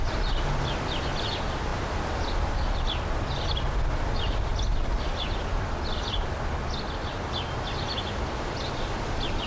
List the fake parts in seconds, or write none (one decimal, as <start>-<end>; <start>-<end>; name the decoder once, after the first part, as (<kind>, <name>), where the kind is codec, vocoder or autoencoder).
none